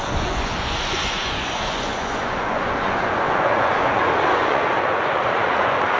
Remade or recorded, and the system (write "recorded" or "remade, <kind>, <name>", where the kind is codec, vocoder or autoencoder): remade, vocoder, Vocos